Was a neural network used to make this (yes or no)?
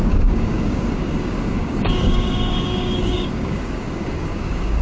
yes